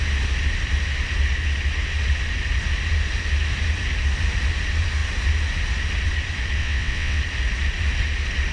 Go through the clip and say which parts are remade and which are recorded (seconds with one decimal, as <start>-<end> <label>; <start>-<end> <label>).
0.0-6.6 recorded; 6.6-7.2 remade; 7.2-8.5 recorded